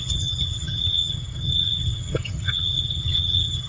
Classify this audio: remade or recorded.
remade